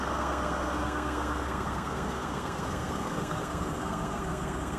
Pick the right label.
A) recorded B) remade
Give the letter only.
B